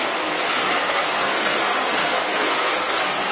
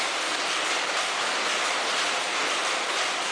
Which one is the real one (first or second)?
second